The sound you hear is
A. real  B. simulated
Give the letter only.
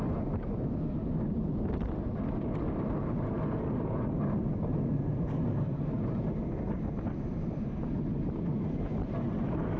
A